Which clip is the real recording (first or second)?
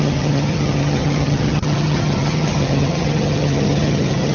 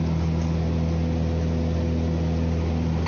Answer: second